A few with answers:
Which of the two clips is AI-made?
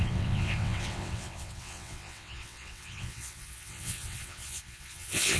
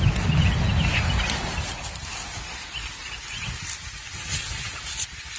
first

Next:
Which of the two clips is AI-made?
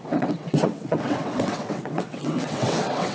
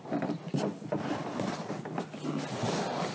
first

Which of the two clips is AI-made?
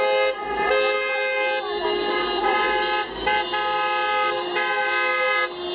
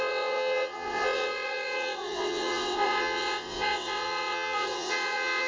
second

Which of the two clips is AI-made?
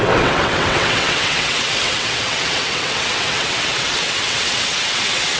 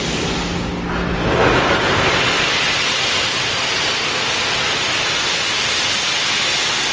first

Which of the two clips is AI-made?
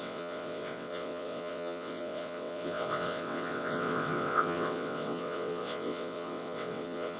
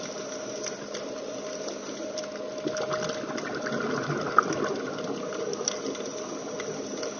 first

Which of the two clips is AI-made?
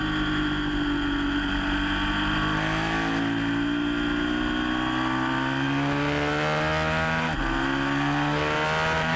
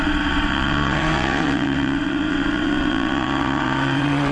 second